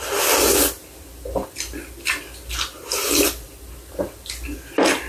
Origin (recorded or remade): recorded